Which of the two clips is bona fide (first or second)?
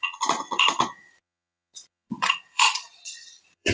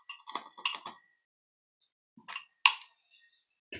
second